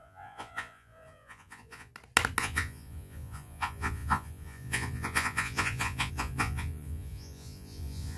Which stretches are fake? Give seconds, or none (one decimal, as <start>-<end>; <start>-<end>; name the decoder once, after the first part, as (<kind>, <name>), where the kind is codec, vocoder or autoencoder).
0.0-1.9 (vocoder, Vocos); 2.4-8.2